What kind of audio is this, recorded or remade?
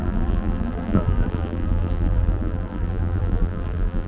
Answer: remade